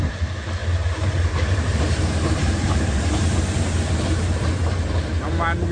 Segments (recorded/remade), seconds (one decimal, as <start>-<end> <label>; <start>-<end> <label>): 0.0-4.6 remade; 4.6-5.7 recorded